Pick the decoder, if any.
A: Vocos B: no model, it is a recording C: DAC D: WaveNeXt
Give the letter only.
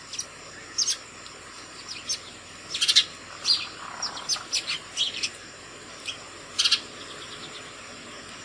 B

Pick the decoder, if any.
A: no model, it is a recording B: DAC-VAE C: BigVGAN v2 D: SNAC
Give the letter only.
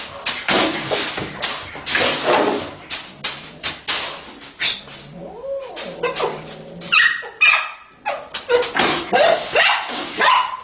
A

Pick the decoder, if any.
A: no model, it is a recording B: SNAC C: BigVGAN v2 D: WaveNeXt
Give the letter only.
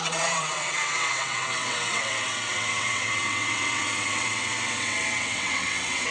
D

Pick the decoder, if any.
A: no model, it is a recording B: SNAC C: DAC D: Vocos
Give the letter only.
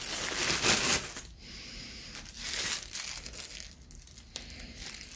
A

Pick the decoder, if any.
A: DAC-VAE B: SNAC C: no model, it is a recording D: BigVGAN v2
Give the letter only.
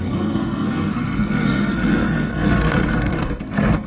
B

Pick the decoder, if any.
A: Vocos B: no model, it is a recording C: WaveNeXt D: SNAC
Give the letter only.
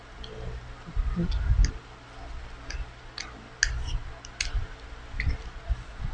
B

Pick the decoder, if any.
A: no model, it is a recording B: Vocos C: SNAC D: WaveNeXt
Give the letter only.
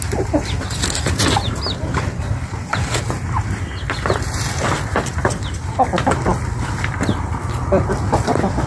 A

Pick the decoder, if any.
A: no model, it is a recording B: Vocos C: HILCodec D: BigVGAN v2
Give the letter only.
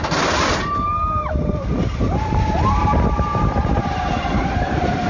D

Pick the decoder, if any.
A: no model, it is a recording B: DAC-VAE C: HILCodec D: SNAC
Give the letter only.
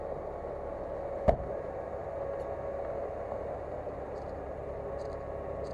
A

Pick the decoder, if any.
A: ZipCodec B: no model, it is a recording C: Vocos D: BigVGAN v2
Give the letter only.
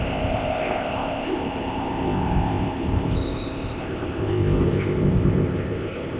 A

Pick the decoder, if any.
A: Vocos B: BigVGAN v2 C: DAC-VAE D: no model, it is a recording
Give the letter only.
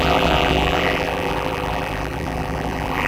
B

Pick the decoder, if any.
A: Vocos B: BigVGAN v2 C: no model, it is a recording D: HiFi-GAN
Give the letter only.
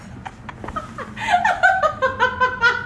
C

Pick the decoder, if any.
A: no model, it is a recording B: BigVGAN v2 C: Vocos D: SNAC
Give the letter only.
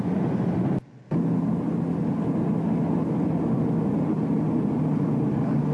A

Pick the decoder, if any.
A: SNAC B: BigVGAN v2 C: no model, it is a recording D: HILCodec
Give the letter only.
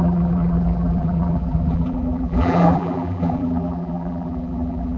B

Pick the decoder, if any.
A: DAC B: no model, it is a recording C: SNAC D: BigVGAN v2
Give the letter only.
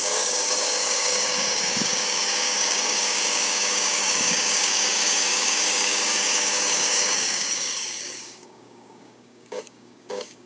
A